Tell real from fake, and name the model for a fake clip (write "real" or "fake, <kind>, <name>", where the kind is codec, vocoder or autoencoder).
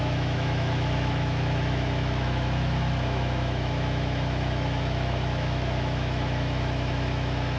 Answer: fake, autoencoder, DAC-VAE